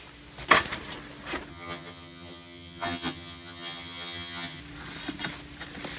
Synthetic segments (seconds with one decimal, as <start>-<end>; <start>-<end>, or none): 1.5-4.6

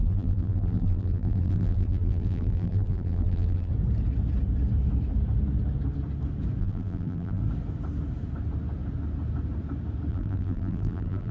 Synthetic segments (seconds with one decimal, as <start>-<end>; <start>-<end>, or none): 0.0-3.7; 6.6-7.4; 10.1-11.3